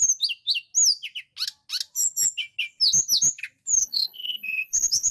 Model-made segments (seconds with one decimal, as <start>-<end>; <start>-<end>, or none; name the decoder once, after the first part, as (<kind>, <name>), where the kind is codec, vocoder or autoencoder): 3.8-5.1 (codec, HILCodec)